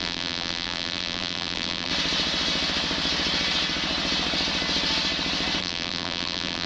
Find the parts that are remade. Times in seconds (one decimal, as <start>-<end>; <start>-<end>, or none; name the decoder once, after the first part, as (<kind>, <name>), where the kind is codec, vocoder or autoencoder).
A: 0.0-1.9 (vocoder, BigVGAN v2); 5.6-6.7